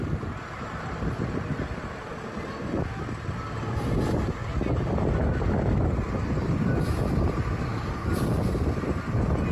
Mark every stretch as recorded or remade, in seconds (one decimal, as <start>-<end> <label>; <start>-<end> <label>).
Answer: 0.0-7.7 recorded; 7.7-8.3 remade; 8.3-9.5 recorded